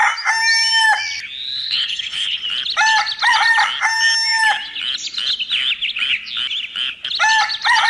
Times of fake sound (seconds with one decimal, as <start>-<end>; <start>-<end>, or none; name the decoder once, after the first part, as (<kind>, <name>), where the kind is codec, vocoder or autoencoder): 1.6-2.4 (codec, HILCodec)